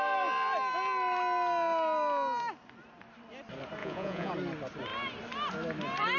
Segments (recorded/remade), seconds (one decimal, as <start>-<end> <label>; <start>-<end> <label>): 0.0-3.8 recorded; 3.8-4.3 remade; 4.3-6.2 recorded